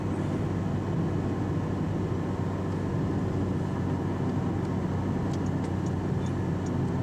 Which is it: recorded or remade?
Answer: recorded